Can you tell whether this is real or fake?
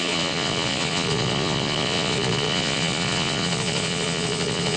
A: fake